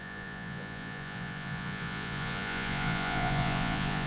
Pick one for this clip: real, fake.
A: fake